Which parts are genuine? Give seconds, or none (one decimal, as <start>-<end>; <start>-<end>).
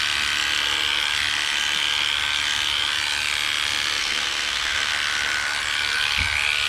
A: 0.0-4.0; 4.9-6.7